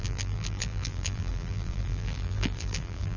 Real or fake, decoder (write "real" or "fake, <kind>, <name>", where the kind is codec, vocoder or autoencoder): fake, vocoder, BigVGAN v2